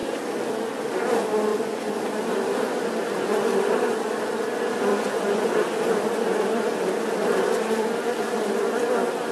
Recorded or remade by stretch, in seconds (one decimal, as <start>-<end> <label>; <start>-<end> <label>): 0.0-1.5 recorded; 1.5-2.0 remade; 2.0-4.9 recorded; 4.9-5.5 remade; 5.5-9.3 recorded